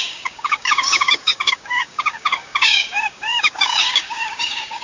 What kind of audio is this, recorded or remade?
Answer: remade